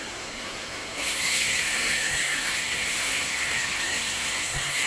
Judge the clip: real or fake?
fake